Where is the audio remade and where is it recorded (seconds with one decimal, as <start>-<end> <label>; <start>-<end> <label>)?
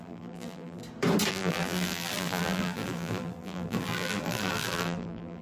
0.0-0.8 remade; 0.8-1.3 recorded; 1.3-5.4 remade